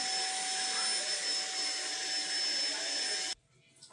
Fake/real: real